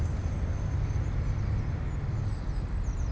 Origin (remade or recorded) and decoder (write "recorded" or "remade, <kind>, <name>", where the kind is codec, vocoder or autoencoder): recorded